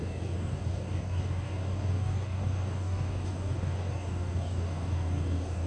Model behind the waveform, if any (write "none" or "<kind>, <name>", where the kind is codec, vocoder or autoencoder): codec, DAC